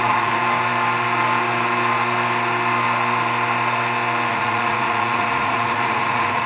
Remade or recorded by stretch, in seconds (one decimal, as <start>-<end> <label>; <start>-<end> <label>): 0.0-0.4 remade; 0.4-4.3 recorded; 4.3-6.5 remade